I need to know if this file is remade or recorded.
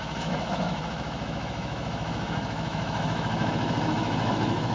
remade